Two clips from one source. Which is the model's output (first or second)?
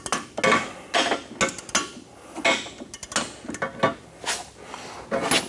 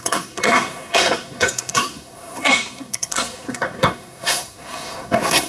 second